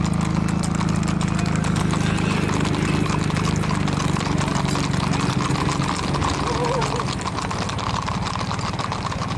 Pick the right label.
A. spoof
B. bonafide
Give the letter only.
B